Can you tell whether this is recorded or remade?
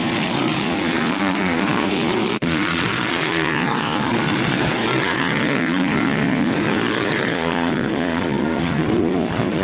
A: remade